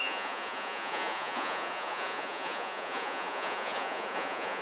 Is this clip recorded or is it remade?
remade